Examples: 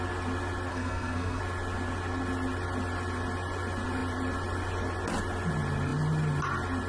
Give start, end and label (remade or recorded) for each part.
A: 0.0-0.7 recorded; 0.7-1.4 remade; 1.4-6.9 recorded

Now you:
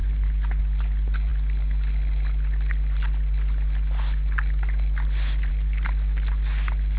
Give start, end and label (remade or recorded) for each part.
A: 0.0-7.0 recorded